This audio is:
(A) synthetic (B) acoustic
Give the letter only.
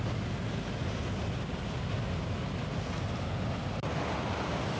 B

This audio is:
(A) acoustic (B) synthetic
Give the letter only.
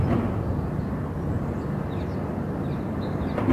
A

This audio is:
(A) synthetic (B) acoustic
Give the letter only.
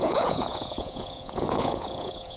A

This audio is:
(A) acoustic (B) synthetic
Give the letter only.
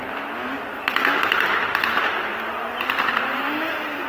A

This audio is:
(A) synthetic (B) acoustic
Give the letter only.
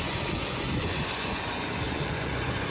A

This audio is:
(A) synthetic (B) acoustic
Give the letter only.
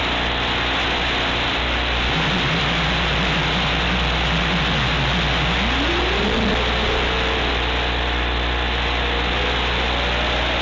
B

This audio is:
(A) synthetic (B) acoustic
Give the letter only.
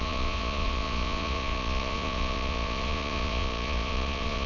A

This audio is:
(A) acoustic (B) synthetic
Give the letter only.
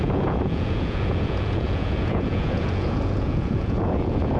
B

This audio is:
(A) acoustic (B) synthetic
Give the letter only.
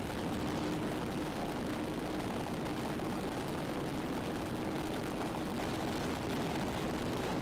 A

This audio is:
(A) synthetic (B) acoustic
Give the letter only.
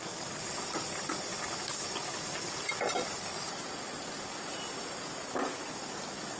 B